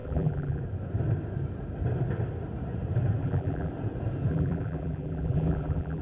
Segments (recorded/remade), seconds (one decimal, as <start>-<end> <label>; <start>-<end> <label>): 0.0-0.6 remade; 0.6-3.2 recorded; 3.2-3.7 remade; 3.7-4.3 recorded; 4.3-6.0 remade